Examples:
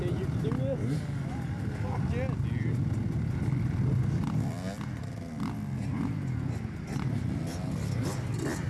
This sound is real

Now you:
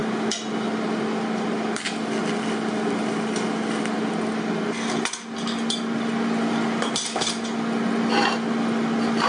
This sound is real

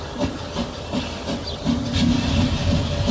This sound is real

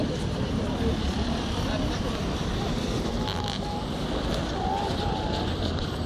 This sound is fake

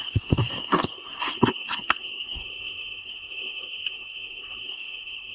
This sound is fake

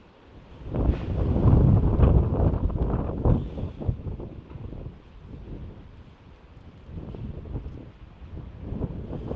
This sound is real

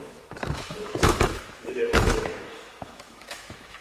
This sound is fake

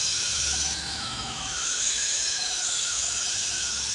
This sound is fake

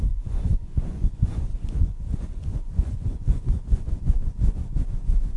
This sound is fake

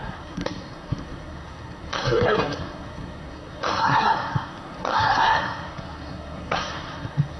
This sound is fake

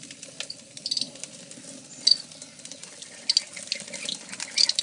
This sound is real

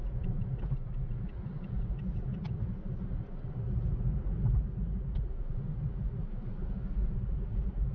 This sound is real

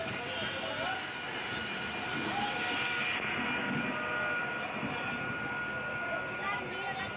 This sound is real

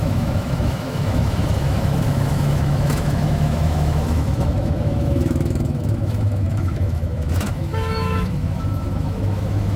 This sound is fake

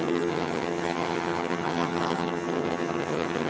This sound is fake